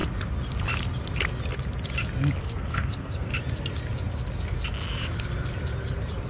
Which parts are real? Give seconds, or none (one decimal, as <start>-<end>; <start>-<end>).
0.0-2.4; 3.3-6.3